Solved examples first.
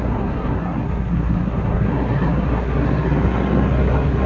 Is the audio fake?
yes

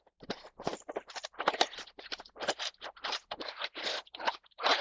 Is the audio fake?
no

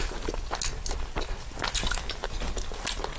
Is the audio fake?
no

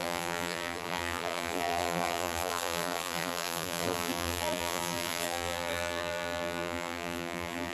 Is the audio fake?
yes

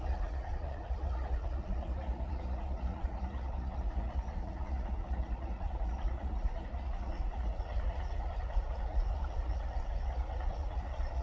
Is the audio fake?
yes